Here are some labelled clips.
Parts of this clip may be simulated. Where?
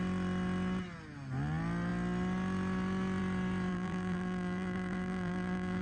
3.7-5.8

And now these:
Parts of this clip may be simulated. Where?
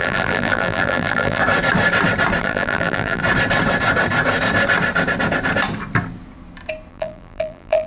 0.0-1.4; 2.4-3.2; 6.9-7.9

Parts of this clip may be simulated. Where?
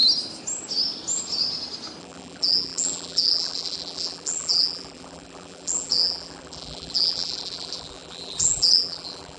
2.0-9.4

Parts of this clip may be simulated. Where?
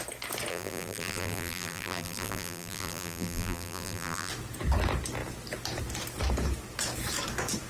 0.5-4.3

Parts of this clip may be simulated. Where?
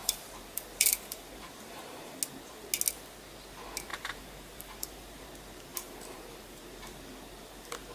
0.0-2.2; 3.9-5.2; 5.7-6.6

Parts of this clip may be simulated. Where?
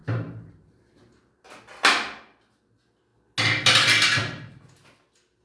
0.0-1.5